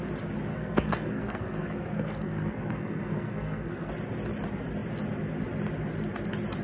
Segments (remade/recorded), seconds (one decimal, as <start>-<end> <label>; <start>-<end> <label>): 0.0-0.5 recorded; 0.5-3.9 remade; 3.9-6.6 recorded